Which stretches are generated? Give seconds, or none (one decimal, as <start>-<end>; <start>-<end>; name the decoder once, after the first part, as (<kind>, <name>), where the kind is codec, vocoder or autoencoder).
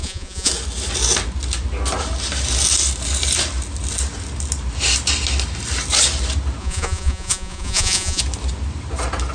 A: 0.0-0.5 (vocoder, Vocos); 6.6-8.2